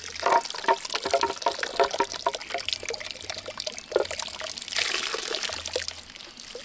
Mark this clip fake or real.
real